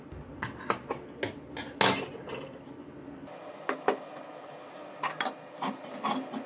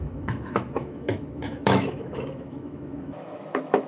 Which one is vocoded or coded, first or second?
second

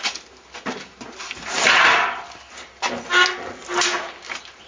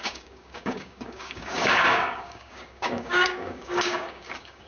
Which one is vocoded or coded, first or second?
second